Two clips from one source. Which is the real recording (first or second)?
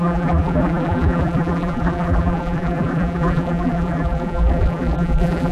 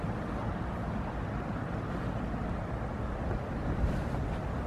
second